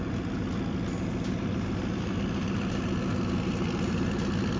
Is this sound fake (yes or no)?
no